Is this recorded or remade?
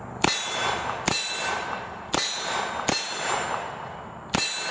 remade